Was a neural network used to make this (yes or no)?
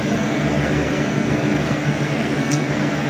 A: yes